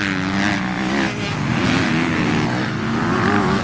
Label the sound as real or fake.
real